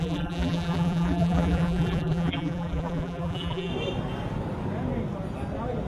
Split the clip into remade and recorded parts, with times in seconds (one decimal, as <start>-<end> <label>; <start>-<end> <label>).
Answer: 0.0-3.7 remade; 3.7-5.9 recorded